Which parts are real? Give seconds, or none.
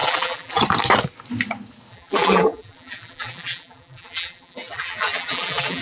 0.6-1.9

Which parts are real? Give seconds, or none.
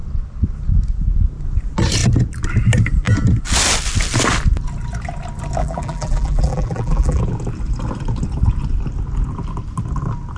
0.0-5.6; 7.2-10.4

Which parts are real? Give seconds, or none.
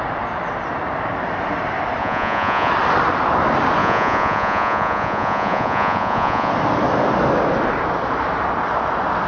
0.0-2.0; 2.7-3.8; 6.5-9.3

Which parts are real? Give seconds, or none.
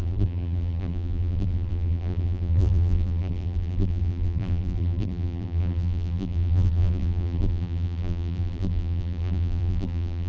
none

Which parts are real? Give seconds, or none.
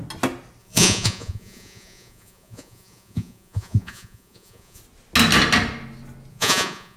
0.0-0.6; 4.8-6.3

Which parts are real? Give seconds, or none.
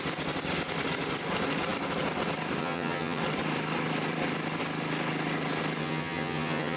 0.0-2.6; 3.2-5.8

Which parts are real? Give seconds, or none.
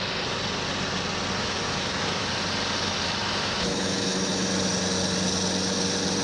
0.0-1.4; 2.3-3.2; 4.3-6.2